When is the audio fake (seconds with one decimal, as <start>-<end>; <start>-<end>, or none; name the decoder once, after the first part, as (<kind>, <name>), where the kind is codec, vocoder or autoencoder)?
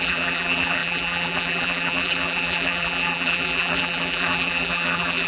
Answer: 0.0-5.3 (vocoder, BigVGAN v2)